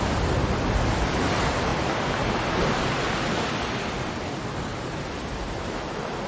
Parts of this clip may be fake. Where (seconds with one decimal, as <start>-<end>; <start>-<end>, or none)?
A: 1.7-3.5; 4.7-5.7